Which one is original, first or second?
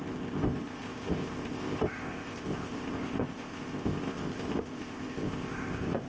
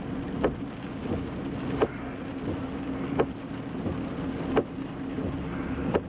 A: second